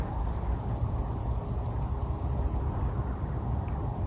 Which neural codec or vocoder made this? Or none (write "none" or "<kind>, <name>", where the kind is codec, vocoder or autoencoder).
none